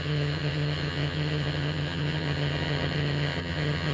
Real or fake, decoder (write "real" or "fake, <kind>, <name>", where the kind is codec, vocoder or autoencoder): fake, vocoder, HiFi-GAN